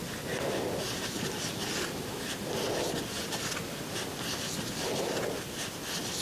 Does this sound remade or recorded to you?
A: recorded